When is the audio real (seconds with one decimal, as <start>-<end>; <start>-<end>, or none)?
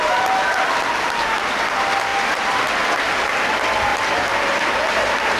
0.0-2.1; 2.7-3.9; 4.6-5.4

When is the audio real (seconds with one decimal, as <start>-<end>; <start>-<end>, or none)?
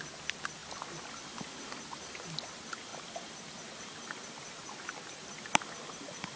0.0-6.4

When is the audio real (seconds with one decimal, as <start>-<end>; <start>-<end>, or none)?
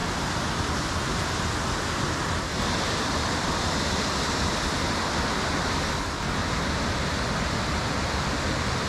0.0-8.9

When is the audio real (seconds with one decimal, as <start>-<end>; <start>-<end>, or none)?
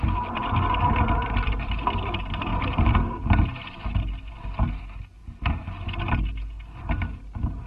0.0-7.7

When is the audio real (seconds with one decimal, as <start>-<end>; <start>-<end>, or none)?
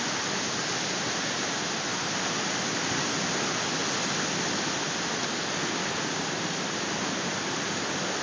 0.0-8.2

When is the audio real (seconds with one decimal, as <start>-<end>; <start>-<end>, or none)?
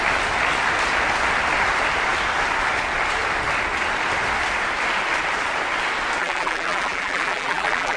0.0-6.2